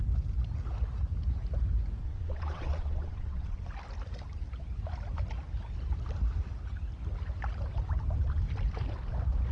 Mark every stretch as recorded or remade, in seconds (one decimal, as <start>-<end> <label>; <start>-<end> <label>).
0.0-2.0 recorded; 2.0-3.6 remade; 3.6-9.5 recorded